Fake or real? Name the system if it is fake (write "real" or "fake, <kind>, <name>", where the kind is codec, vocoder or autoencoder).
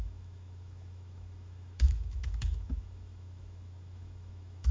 fake, autoencoder, DAC-VAE